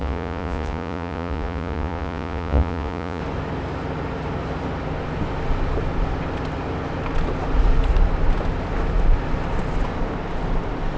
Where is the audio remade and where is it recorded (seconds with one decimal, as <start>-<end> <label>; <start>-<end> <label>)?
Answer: 0.0-3.2 remade; 3.2-11.0 recorded